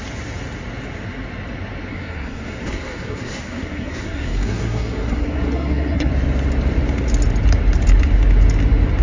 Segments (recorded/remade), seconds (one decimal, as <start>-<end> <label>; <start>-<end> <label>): 0.0-1.9 recorded; 1.9-6.1 remade; 6.1-9.0 recorded